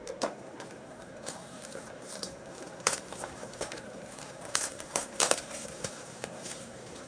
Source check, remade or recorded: remade